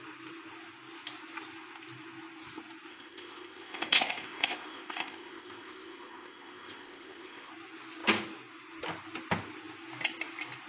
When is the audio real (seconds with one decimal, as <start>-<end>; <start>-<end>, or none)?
0.0-2.9; 7.5-10.7